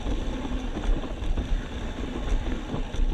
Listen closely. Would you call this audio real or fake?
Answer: real